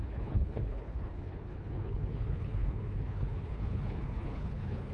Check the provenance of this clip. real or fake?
fake